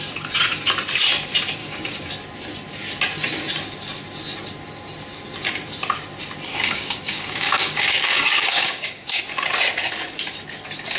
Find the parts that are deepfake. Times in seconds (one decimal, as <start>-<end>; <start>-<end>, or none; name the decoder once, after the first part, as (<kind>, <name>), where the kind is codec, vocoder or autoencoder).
1.6-2.1 (codec, DAC); 6.5-9.2